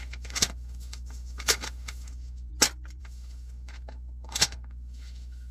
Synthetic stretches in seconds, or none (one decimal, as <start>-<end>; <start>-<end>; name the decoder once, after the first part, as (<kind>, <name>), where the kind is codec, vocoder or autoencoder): 0.0-2.5 (autoencoder, DAC-VAE); 3.0-5.5